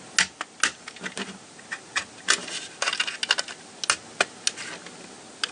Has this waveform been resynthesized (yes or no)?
no